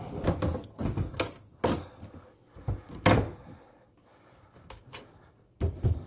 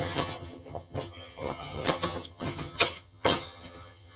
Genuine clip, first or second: first